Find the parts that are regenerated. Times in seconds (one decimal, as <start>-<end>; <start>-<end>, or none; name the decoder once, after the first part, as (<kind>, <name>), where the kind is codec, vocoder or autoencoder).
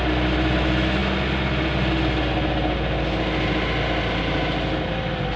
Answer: none